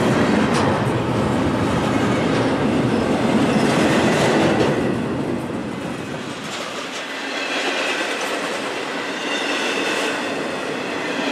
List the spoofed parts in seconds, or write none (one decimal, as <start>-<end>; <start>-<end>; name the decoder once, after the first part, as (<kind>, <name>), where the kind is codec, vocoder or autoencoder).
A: none